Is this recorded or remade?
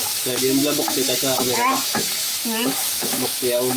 remade